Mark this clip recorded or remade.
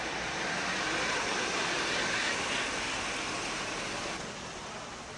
recorded